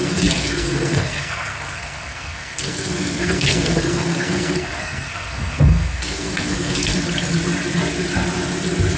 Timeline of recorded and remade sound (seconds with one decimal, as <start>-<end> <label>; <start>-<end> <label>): 0.0-6.9 remade; 6.9-9.0 recorded